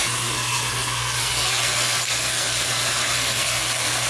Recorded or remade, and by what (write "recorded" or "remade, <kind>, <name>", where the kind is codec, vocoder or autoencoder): remade, codec, SNAC